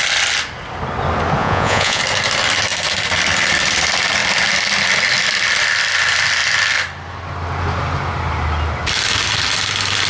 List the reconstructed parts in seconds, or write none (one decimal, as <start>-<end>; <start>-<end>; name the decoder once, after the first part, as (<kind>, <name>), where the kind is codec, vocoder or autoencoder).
1.4-2.0 (vocoder, Vocos)